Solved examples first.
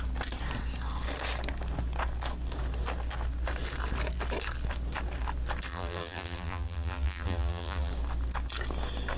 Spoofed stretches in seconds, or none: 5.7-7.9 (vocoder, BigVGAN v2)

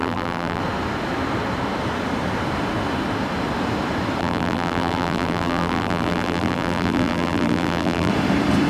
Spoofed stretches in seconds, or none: 0.0-0.6 (vocoder, BigVGAN v2); 4.2-8.1

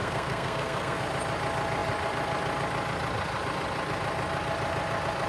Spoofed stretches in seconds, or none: 0.0-1.0 (codec, SNAC)

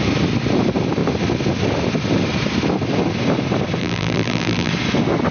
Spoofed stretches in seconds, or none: 3.8-4.7 (vocoder, BigVGAN v2)

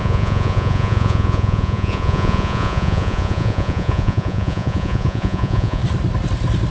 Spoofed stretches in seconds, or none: 0.0-5.8 (vocoder, Vocos)